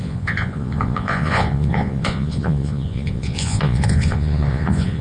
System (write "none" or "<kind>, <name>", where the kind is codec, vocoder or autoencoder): vocoder, Vocos